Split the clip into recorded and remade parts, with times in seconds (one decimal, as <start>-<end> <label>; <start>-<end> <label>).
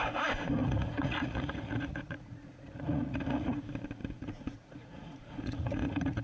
0.0-0.6 recorded; 0.6-3.6 remade; 3.6-4.0 recorded; 4.0-6.2 remade